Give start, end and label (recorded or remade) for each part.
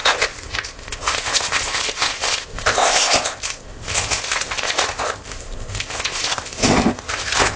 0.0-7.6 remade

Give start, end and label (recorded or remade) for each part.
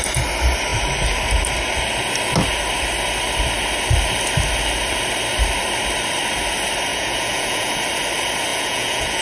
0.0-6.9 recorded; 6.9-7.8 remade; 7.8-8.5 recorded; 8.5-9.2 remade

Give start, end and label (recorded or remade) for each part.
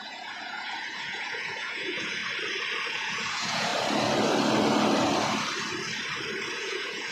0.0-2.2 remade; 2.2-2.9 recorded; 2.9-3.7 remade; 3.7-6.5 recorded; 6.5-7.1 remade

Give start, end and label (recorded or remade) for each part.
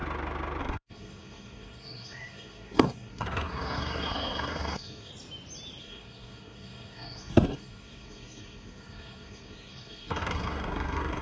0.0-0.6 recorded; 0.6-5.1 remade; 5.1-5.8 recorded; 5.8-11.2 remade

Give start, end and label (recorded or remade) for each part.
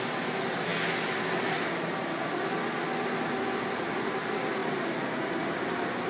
0.0-6.1 recorded